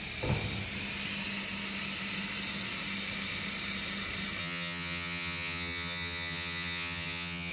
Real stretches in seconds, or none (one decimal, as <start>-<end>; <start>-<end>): 0.0-4.4